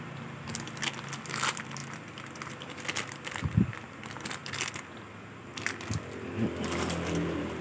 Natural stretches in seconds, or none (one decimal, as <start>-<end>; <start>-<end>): 0.0-7.6